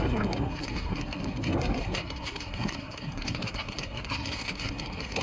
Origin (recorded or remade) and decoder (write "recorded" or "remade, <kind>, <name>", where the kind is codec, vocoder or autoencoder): remade, codec, SNAC